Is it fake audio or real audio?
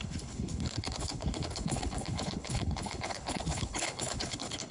fake